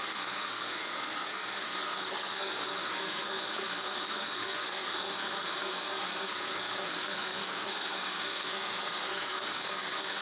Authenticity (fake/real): fake